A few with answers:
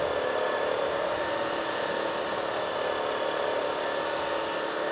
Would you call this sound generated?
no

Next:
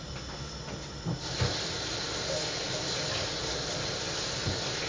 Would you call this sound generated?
no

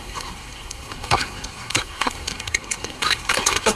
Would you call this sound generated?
yes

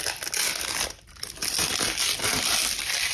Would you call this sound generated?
no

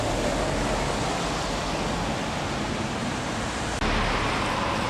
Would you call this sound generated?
no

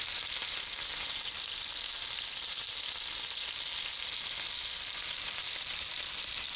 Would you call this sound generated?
no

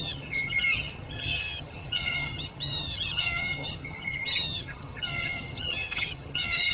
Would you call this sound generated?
yes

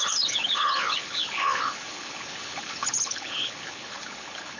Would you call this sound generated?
yes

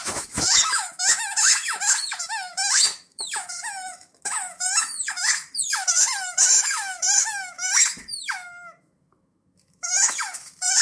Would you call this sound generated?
yes